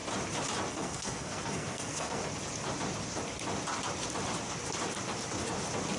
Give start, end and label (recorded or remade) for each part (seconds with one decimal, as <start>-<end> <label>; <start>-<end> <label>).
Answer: 0.0-0.7 recorded; 0.7-2.2 remade; 2.2-6.0 recorded